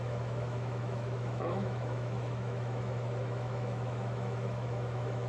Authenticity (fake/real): fake